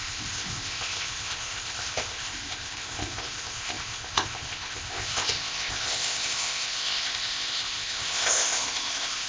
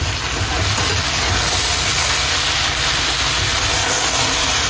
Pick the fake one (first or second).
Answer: first